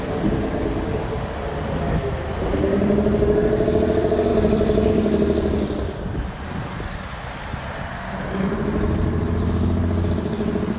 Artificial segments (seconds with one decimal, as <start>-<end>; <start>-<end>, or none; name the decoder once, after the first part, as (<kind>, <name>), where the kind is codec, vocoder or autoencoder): 4.3-4.9 (vocoder, BigVGAN v2)